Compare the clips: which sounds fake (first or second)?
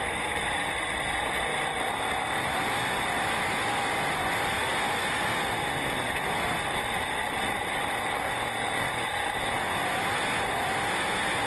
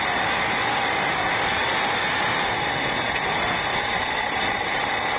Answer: second